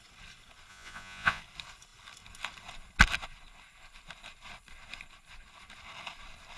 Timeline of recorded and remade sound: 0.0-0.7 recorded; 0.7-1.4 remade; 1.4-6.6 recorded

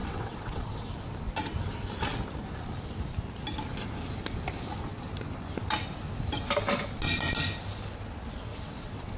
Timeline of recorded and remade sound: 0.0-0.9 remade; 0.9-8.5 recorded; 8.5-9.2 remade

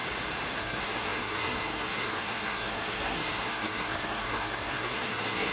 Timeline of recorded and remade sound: 0.0-0.6 recorded; 0.6-5.5 remade

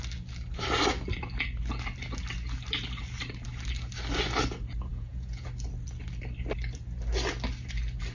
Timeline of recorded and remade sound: 0.0-4.9 recorded; 4.9-5.5 remade; 5.5-8.1 recorded

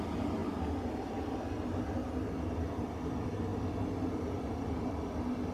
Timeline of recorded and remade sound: 0.0-0.4 remade; 0.4-2.5 recorded; 2.5-3.5 remade; 3.5-4.1 recorded; 4.1-5.5 remade

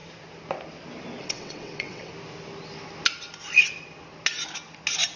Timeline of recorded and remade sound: 0.0-1.2 recorded; 1.2-2.1 remade; 2.1-5.2 recorded

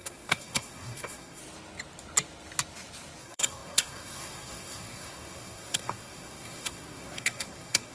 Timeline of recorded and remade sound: 0.0-1.4 remade; 1.4-3.2 recorded; 3.2-7.9 remade